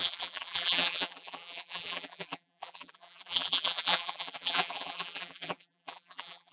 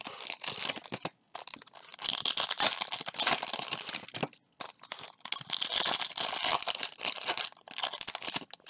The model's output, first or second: first